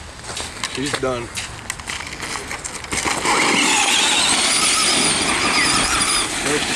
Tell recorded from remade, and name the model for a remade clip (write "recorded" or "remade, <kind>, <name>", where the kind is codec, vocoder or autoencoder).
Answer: recorded